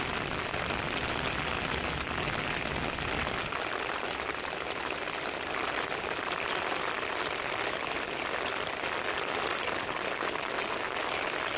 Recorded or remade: recorded